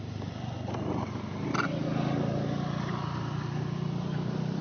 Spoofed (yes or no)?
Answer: no